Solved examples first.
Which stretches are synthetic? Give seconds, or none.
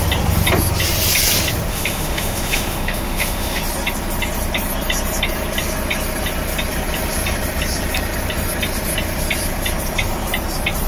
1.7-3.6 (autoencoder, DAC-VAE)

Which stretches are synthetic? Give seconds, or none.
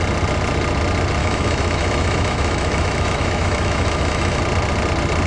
1.2-4.4 (autoencoder, DAC-VAE)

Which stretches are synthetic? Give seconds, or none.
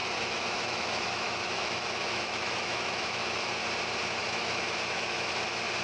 0.0-3.5 (autoencoder, DAC-VAE); 4.2-5.3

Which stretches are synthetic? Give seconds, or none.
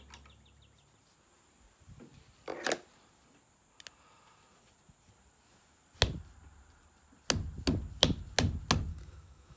8.9-9.6 (autoencoder, DAC-VAE)